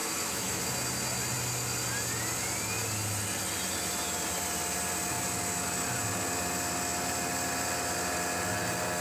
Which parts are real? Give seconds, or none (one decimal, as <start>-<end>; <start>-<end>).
0.6-9.0